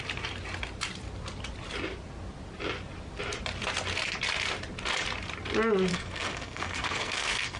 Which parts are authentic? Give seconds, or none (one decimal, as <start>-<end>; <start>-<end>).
0.0-5.9